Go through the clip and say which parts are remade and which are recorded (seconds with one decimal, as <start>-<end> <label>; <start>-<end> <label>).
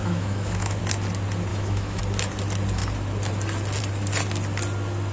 0.0-0.8 remade; 0.8-1.5 recorded; 1.5-2.0 remade; 2.0-5.1 recorded